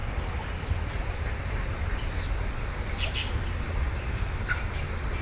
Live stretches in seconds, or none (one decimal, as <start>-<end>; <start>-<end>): 0.0-5.2